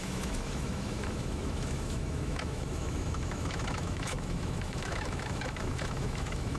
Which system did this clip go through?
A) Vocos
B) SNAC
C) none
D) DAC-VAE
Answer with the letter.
D